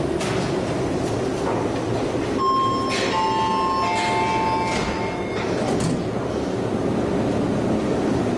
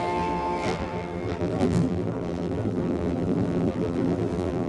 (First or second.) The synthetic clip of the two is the second